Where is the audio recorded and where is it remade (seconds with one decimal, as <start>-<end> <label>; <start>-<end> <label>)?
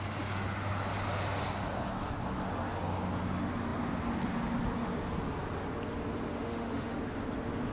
0.0-6.3 recorded; 6.3-7.0 remade; 7.0-7.7 recorded